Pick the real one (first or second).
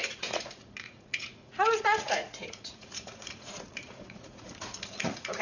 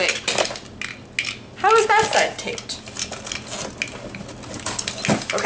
second